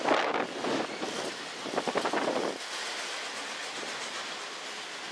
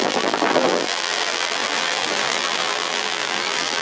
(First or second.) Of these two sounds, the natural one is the first